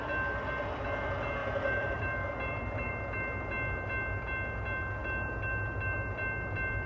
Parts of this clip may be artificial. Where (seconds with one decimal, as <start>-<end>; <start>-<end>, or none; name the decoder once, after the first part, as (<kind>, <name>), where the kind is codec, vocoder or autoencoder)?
1.4-2.9 (vocoder, BigVGAN v2)